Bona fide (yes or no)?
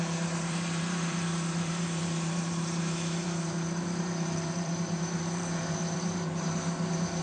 no